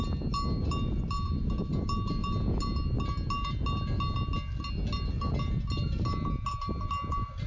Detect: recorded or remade recorded